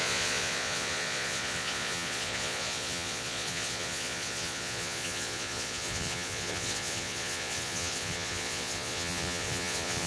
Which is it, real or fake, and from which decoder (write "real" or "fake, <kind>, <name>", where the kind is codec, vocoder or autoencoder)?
fake, vocoder, Vocos